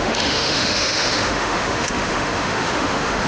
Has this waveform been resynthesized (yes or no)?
yes